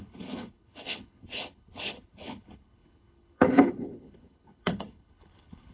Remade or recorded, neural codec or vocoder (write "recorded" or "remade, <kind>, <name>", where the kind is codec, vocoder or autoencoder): remade, codec, HILCodec